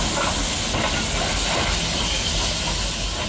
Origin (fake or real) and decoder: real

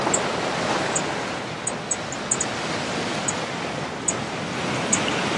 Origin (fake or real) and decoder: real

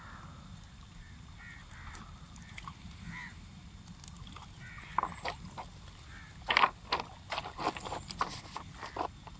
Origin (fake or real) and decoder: real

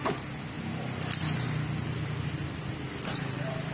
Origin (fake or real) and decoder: real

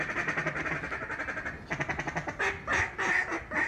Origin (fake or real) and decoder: real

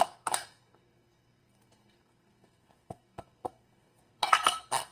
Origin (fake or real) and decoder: fake, codec, SNAC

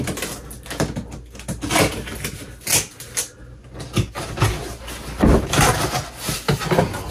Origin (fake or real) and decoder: real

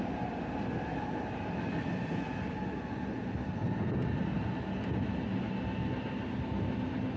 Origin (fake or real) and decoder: real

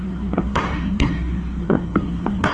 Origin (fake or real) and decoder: fake, codec, SNAC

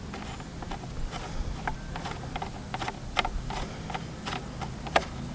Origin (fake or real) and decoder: real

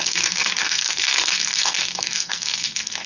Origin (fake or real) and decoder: fake, codec, SNAC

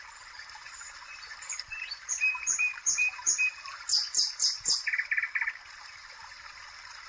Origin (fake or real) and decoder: real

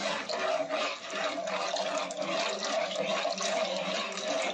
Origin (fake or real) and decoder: real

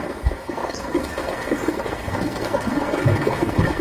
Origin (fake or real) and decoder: fake, codec, SNAC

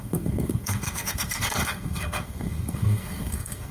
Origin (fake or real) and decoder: fake, codec, SNAC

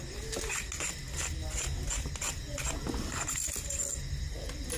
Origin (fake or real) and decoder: real